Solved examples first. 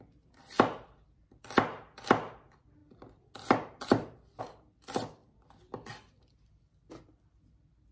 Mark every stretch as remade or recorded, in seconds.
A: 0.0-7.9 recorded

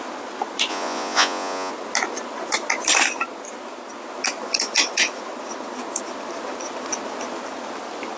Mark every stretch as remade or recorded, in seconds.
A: 0.0-0.7 recorded; 0.7-1.7 remade; 1.7-8.2 recorded

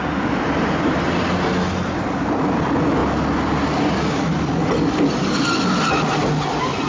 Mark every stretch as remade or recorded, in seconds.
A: 0.0-6.9 recorded

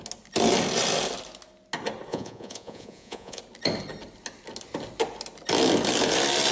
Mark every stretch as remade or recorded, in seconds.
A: 0.0-2.1 recorded; 2.1-3.4 remade; 3.4-6.5 recorded

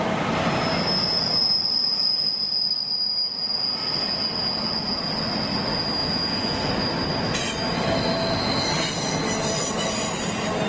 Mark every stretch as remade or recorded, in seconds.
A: 0.0-1.8 recorded; 1.8-2.7 remade; 2.7-6.0 recorded; 6.0-6.7 remade; 6.7-10.7 recorded

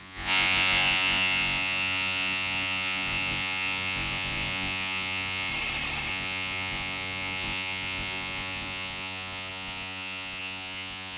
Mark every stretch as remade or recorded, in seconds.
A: 0.0-5.5 remade; 5.5-6.1 recorded; 6.1-11.2 remade

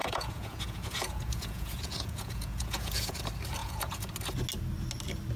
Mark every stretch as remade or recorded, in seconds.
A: 0.0-3.2 remade; 3.2-3.6 recorded; 3.6-4.1 remade; 4.1-5.4 recorded